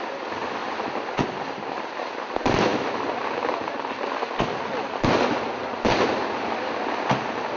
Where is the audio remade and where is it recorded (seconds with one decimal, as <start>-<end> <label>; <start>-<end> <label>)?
0.0-7.6 recorded